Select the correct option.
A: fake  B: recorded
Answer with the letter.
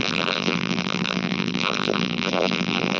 A